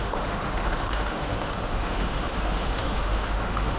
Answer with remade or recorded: remade